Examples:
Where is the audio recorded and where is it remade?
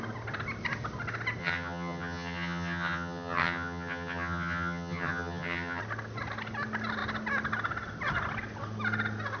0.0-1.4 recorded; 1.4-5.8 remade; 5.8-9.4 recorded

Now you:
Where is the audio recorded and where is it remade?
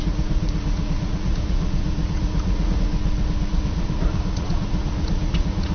0.0-2.9 remade; 2.9-3.5 recorded; 3.5-5.7 remade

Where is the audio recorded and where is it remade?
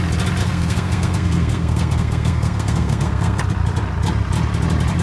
0.0-0.4 recorded; 0.4-3.4 remade; 3.4-5.0 recorded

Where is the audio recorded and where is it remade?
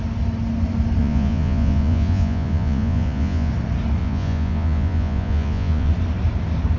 0.0-1.0 recorded; 1.0-3.5 remade; 3.5-4.0 recorded; 4.0-5.9 remade; 5.9-6.8 recorded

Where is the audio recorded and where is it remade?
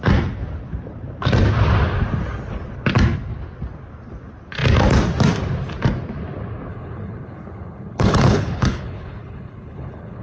0.0-6.7 recorded; 6.7-10.2 remade